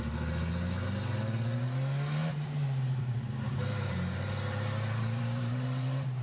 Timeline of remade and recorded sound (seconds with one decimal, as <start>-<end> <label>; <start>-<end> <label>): 0.0-2.2 recorded; 2.2-6.2 remade